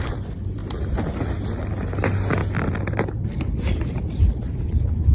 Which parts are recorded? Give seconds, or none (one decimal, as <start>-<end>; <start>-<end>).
0.0-5.1